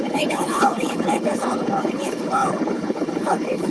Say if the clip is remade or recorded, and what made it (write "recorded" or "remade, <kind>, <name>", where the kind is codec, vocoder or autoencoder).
remade, codec, HILCodec